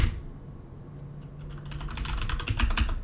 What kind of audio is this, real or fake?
real